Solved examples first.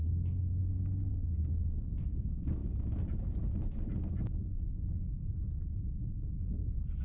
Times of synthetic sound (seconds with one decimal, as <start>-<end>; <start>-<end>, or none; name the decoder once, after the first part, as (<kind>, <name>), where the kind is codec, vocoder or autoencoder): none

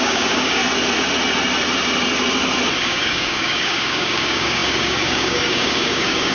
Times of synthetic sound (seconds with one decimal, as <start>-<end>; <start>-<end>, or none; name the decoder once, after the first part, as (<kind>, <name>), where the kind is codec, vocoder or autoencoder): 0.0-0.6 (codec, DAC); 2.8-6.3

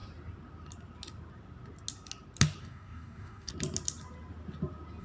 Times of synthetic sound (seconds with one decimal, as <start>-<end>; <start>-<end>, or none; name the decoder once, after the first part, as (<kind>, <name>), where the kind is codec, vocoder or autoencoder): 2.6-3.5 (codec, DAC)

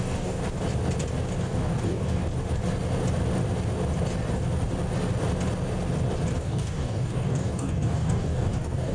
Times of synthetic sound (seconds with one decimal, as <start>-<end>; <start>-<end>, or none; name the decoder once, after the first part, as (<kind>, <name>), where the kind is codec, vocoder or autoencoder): 0.0-0.4 (codec, DAC); 1.4-2.2; 6.4-8.9

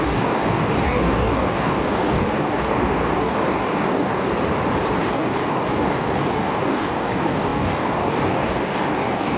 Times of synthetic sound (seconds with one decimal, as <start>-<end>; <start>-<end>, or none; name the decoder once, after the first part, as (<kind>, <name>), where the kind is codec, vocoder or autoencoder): 0.0-4.3 (codec, DAC); 5.0-9.4